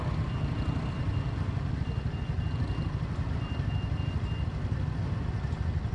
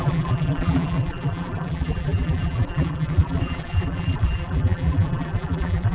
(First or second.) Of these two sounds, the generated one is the second